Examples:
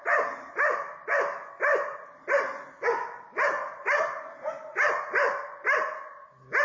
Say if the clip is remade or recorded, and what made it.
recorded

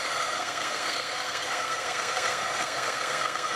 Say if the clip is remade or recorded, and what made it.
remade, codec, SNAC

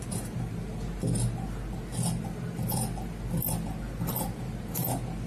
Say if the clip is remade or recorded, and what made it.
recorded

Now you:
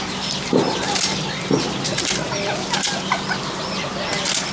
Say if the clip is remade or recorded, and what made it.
recorded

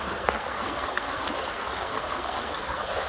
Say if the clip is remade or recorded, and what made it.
remade, codec, SNAC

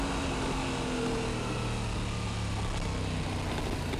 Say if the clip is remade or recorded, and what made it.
recorded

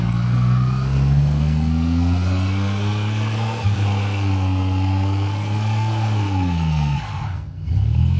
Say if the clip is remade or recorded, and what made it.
remade, codec, SNAC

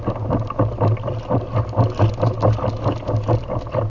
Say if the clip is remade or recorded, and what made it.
recorded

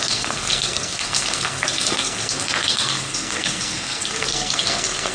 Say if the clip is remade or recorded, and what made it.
remade, codec, SNAC